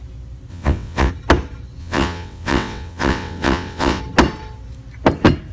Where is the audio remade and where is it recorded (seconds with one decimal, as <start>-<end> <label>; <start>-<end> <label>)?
0.0-0.5 recorded; 0.5-1.1 remade; 1.1-1.8 recorded; 1.8-4.0 remade; 4.0-5.5 recorded